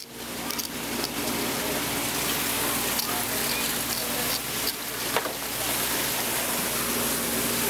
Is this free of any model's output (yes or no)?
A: yes